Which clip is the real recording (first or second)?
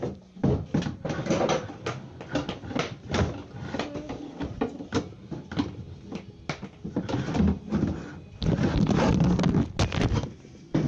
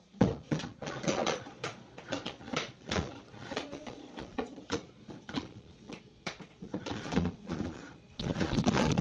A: first